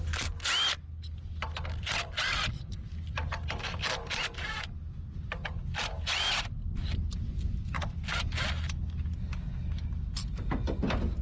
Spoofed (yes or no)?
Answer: no